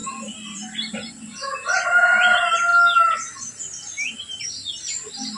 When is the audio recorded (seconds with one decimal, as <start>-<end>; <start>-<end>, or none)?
0.0-5.4